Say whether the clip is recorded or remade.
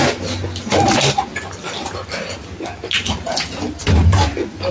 recorded